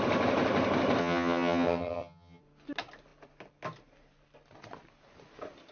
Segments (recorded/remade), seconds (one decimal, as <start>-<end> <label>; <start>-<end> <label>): 0.0-1.0 recorded; 1.0-2.4 remade; 2.4-5.7 recorded